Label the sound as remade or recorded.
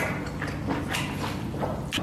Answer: recorded